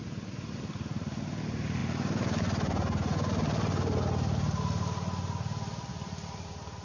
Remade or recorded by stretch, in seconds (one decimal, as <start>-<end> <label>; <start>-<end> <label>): 0.0-6.8 recorded